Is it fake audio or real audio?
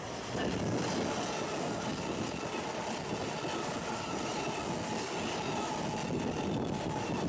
real